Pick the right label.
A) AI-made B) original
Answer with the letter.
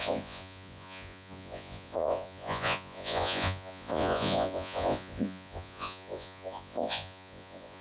A